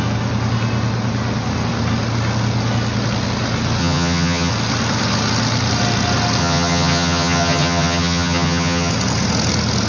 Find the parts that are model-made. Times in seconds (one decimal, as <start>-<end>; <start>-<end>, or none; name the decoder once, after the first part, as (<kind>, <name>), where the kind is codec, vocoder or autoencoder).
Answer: 3.8-4.5 (vocoder, HiFi-GAN); 6.4-8.9